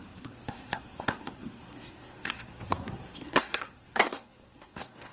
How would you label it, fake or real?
fake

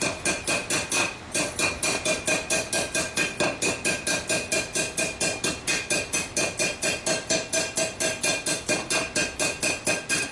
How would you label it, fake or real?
real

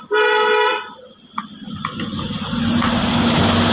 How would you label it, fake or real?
real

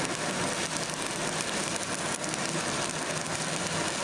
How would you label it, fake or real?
real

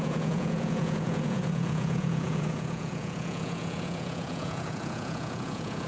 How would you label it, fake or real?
fake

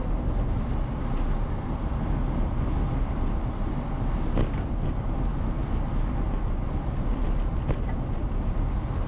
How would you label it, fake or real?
real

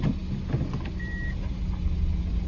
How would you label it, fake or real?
real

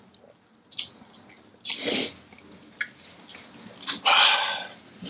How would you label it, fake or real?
real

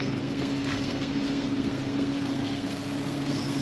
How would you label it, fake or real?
fake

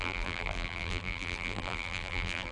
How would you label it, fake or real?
fake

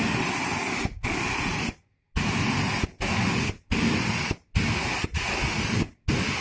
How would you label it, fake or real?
real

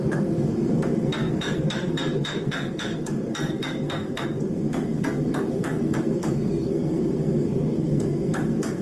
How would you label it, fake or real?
fake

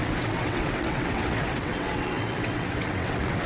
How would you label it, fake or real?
fake